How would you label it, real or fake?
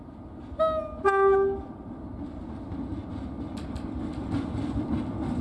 real